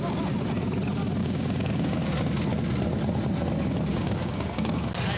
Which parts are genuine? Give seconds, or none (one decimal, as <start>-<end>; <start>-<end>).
0.0-1.2; 2.1-3.9; 4.7-5.2